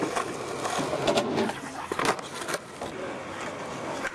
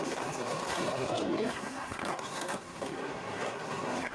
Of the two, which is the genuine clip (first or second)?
first